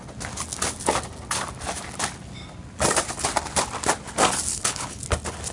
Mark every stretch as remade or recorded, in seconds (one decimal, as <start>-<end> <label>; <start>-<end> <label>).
0.0-4.5 recorded; 4.5-5.0 remade; 5.0-5.5 recorded